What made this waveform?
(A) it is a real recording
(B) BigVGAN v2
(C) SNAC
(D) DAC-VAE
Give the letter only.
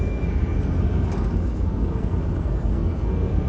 C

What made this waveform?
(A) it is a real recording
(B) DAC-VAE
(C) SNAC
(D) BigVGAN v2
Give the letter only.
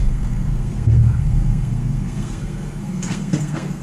C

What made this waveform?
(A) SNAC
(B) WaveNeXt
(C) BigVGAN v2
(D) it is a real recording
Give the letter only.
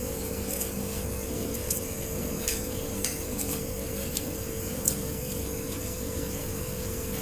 A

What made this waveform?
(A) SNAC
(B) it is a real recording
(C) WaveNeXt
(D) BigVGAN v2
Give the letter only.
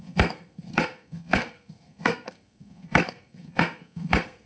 A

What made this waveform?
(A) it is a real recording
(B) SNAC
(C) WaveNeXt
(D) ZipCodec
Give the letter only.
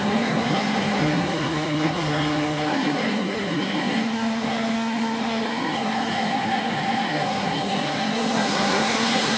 B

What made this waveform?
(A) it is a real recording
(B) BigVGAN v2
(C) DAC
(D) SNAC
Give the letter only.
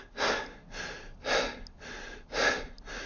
A